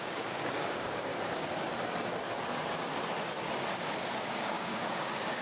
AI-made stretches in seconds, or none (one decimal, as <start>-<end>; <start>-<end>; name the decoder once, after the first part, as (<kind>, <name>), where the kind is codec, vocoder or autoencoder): 0.0-1.1 (codec, DAC); 3.7-5.4